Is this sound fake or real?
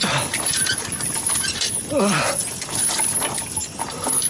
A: real